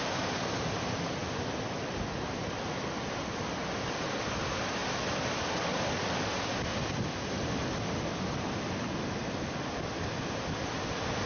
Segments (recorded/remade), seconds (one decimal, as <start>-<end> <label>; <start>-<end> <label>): 0.0-4.8 remade; 4.8-5.3 recorded; 5.3-7.6 remade; 7.6-10.5 recorded; 10.5-11.3 remade